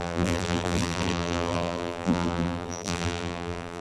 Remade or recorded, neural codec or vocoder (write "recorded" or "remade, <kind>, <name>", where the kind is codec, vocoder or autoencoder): remade, vocoder, BigVGAN v2